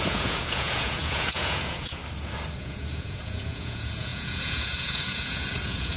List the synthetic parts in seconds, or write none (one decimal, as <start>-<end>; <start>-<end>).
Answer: 0.0-2.0; 2.6-6.0